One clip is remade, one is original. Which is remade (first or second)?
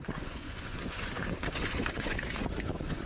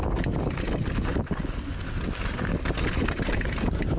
first